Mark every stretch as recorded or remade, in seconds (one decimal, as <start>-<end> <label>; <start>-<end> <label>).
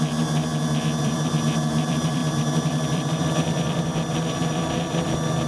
0.0-0.5 remade; 0.5-1.0 recorded; 1.0-5.5 remade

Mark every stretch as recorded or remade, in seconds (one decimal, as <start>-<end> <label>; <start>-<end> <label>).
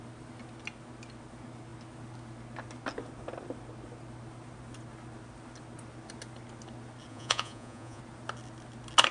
0.0-7.1 recorded; 7.1-8.0 remade; 8.0-9.1 recorded